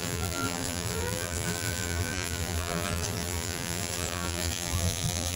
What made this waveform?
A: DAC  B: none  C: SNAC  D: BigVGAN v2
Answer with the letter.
D